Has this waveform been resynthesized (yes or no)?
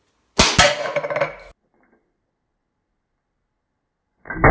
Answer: no